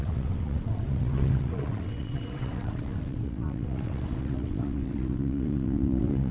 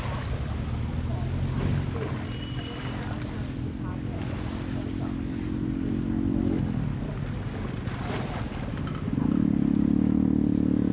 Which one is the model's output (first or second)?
first